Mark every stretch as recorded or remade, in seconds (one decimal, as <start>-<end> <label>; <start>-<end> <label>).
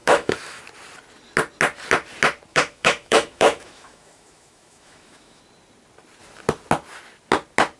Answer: 0.0-0.6 remade; 0.6-2.5 recorded; 2.5-5.4 remade; 5.4-7.8 recorded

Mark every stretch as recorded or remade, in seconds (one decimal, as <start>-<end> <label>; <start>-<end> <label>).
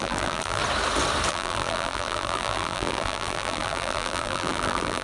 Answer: 0.0-0.6 remade; 0.6-1.3 recorded; 1.3-5.0 remade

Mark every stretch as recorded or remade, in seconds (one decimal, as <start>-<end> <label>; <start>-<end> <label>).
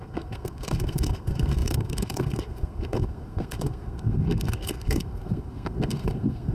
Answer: 0.0-6.5 remade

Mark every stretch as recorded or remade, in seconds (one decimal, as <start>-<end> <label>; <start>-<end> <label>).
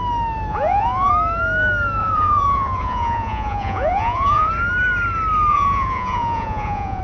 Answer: 0.0-0.5 recorded; 0.5-1.1 remade; 1.1-2.0 recorded; 2.0-4.5 remade; 4.5-5.5 recorded; 5.5-7.0 remade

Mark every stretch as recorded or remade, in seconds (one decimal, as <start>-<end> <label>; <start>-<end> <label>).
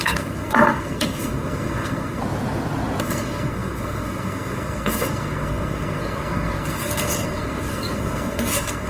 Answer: 0.0-2.2 remade; 2.2-3.0 recorded; 3.0-8.9 remade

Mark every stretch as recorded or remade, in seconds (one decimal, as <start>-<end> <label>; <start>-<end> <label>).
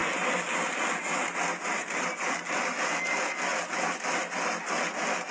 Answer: 0.0-5.3 recorded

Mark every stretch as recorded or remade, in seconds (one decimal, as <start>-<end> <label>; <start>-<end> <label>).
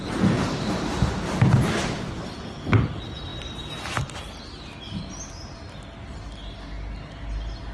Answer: 0.0-7.7 recorded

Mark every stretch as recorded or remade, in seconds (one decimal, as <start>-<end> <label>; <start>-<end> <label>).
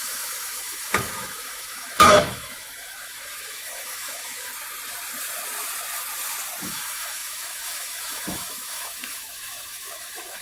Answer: 0.0-4.5 remade; 4.5-6.6 recorded; 6.6-10.4 remade